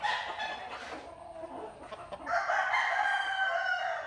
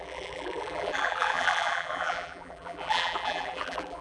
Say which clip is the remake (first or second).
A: second